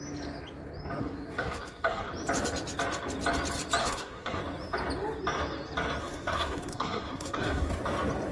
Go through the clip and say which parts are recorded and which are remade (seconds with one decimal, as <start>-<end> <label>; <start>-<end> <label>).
0.0-1.0 recorded; 1.0-2.1 remade; 2.1-3.8 recorded; 3.8-4.4 remade; 4.4-6.0 recorded; 6.0-7.7 remade; 7.7-8.3 recorded